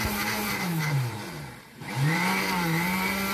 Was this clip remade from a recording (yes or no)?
yes